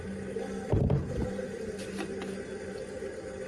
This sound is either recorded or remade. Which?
recorded